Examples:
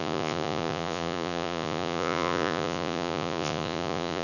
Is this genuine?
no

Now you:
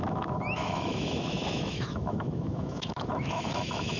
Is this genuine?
no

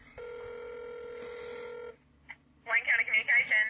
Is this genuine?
yes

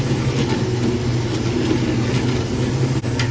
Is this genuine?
yes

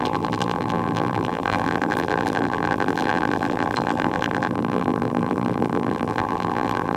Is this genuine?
no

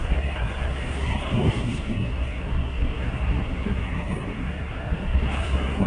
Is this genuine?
no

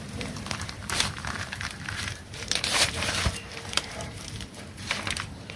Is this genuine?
no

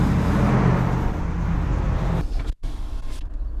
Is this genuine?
yes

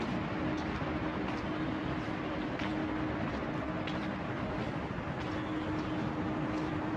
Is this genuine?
yes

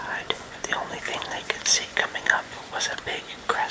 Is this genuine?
no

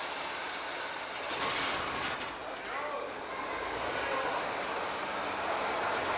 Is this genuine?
yes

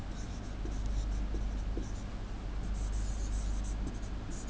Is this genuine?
yes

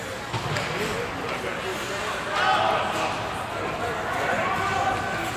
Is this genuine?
yes